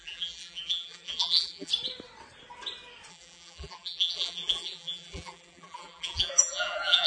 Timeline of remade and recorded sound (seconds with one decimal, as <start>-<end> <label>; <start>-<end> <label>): 0.0-1.7 remade; 1.7-3.1 recorded; 3.1-7.1 remade